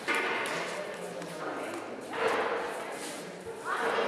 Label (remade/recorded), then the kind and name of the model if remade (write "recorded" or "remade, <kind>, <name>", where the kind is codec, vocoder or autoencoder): recorded